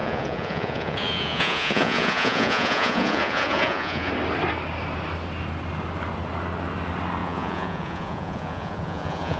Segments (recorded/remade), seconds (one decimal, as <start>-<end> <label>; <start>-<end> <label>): 0.0-4.1 remade; 4.1-7.2 recorded; 7.2-9.4 remade